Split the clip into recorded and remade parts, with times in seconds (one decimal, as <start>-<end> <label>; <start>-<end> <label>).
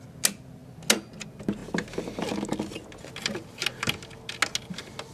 0.0-5.1 recorded